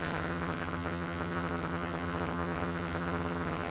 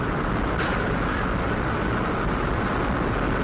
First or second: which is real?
second